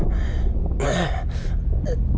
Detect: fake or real real